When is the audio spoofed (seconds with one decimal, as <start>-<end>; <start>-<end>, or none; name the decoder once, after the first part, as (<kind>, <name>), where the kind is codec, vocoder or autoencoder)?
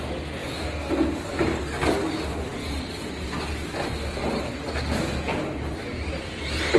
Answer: none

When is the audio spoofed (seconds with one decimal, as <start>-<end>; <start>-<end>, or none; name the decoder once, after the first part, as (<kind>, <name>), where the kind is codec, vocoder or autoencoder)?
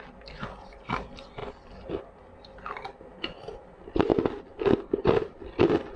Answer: none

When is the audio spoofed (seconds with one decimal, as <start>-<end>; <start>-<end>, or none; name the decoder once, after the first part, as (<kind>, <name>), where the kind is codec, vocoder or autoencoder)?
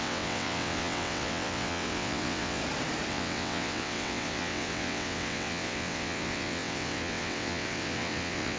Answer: 0.0-2.6 (vocoder, WaveNeXt); 3.1-8.6